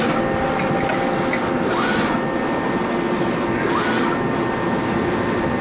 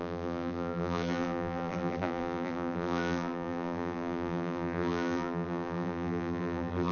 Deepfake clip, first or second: second